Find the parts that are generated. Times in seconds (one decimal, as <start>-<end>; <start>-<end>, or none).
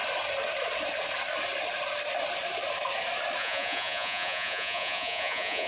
3.4-5.7